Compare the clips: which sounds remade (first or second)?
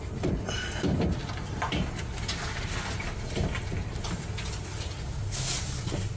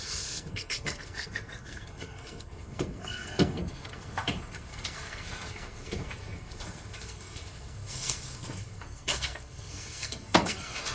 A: second